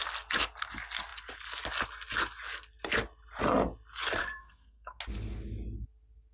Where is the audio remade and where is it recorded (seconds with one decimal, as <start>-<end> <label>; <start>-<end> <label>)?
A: 0.0-4.2 recorded; 4.2-5.0 remade; 5.0-6.3 recorded